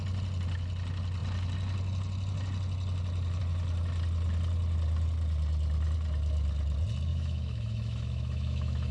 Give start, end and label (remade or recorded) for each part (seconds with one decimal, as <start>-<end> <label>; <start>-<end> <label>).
0.0-7.1 recorded; 7.1-8.9 remade